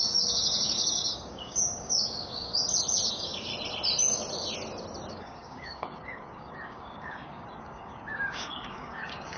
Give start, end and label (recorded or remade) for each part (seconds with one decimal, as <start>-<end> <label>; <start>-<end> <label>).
0.0-2.5 remade; 2.5-3.1 recorded; 3.1-3.5 remade; 3.5-5.1 recorded; 5.1-9.4 remade